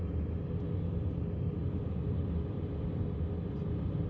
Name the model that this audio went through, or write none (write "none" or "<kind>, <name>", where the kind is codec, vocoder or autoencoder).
none